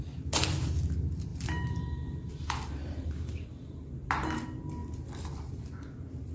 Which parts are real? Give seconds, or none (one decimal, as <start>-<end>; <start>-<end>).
0.0-1.3; 3.9-6.3